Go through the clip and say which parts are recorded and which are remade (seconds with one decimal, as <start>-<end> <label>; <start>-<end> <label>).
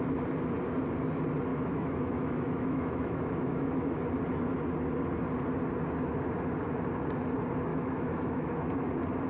0.0-1.5 recorded; 1.5-4.0 remade; 4.0-7.7 recorded; 7.7-8.9 remade; 8.9-9.3 recorded